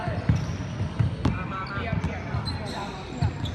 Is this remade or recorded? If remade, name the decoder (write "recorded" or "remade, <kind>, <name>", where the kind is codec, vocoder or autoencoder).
recorded